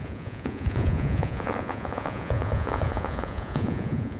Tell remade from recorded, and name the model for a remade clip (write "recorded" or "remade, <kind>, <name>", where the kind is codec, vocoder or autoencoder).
remade, vocoder, Vocos